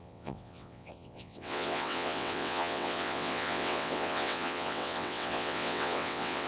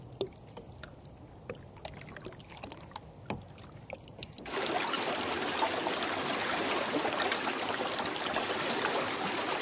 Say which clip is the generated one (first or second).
first